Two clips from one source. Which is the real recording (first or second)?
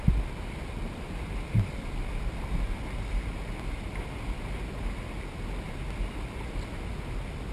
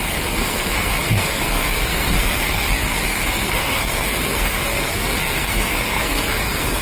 first